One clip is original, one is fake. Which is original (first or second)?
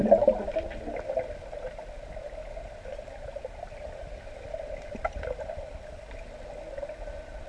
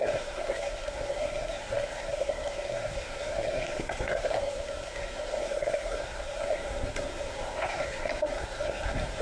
first